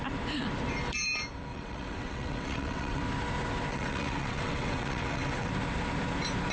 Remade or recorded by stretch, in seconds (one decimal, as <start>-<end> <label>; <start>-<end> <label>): 0.0-1.5 recorded; 1.5-3.0 remade; 3.0-3.7 recorded; 3.7-5.5 remade; 5.5-6.5 recorded